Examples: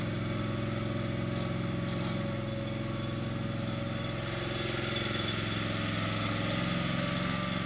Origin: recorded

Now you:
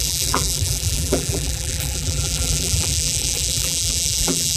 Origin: remade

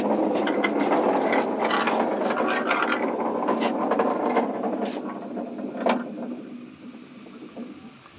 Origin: recorded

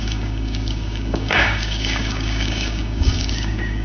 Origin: remade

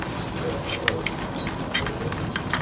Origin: recorded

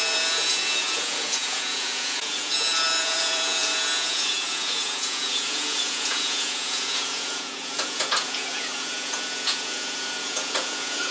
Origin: remade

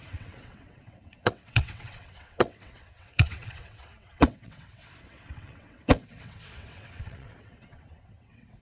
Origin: remade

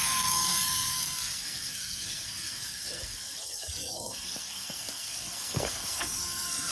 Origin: remade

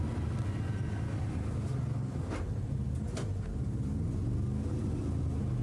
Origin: recorded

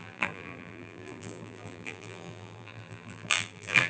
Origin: remade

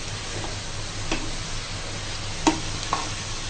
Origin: recorded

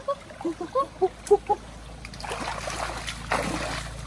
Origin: recorded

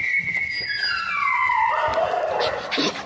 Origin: recorded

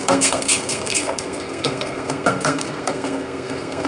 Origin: remade